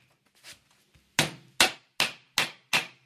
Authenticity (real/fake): real